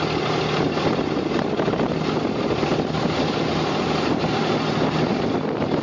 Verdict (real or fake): real